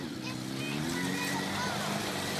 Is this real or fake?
real